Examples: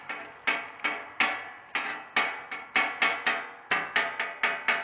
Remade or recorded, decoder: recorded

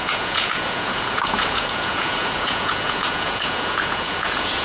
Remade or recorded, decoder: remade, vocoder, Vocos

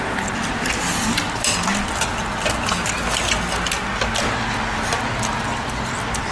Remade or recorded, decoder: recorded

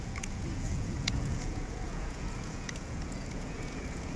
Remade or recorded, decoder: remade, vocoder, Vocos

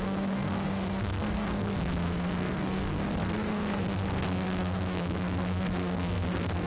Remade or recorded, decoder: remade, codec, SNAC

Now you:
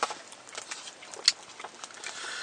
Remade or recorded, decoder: recorded